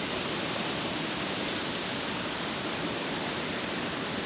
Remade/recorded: remade